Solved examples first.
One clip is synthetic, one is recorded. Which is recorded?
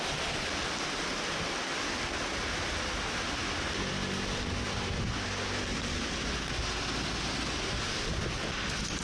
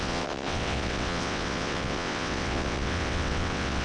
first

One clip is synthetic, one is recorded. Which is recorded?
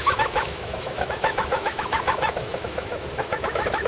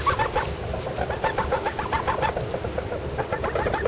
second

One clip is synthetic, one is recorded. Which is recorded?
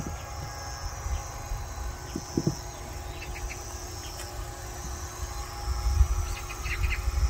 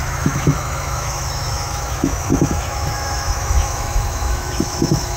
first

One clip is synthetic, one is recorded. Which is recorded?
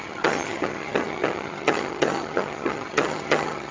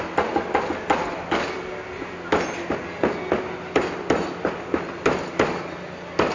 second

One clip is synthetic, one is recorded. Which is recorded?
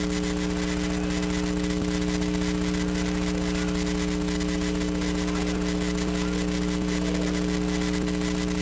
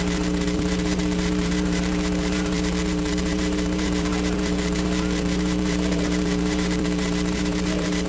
first